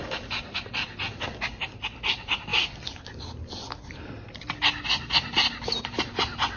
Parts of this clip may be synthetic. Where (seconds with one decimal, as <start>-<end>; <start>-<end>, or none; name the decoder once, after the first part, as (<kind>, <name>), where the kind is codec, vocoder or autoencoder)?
none